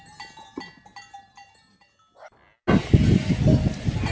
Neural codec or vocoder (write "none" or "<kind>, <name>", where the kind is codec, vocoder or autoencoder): none